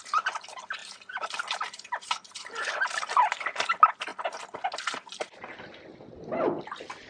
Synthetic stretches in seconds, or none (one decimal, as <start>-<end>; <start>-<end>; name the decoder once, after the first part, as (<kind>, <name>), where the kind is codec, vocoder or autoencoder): 0.8-3.1 (vocoder, BigVGAN v2)

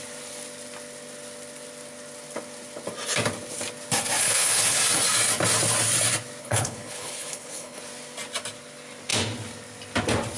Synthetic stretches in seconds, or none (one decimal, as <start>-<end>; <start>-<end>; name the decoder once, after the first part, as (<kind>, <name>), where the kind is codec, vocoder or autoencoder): 4.2-4.8 (codec, HILCodec); 6.4-7.8

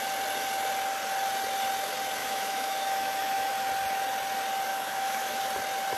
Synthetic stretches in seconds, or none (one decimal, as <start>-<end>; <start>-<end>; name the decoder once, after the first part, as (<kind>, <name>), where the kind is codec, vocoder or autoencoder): 2.2-3.5 (autoencoder, DAC-VAE); 4.7-5.4

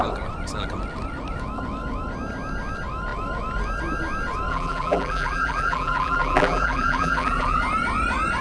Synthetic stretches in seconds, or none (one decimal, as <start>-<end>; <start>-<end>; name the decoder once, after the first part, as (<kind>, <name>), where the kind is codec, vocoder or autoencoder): 4.5-7.6 (vocoder, BigVGAN v2)

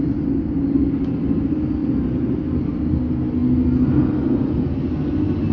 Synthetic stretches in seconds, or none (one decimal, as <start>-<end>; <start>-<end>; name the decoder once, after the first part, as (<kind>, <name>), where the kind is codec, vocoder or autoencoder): 0.0-3.4 (vocoder, BigVGAN v2)

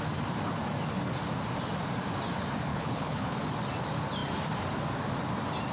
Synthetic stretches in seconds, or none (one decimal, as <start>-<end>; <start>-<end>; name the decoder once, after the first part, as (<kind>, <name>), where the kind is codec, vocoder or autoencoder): 2.7-3.4 (codec, HILCodec)

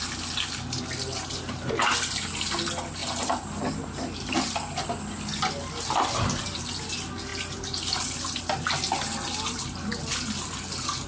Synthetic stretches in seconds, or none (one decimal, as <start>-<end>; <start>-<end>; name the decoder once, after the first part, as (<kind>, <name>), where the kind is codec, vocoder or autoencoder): none

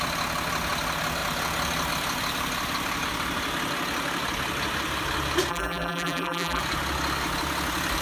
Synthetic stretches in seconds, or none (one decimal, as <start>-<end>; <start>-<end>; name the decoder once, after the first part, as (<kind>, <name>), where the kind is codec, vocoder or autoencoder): 5.5-6.6 (vocoder, BigVGAN v2)